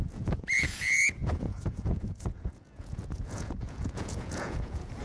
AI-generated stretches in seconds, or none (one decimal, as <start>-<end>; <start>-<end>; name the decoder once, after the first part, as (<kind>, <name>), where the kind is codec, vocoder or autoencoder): 0.0-5.0 (vocoder, Vocos)